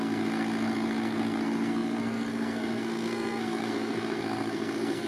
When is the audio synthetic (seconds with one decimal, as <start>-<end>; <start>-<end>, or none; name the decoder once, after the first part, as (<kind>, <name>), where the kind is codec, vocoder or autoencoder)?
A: 0.0-5.1 (codec, SNAC)